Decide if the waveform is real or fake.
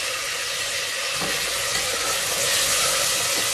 fake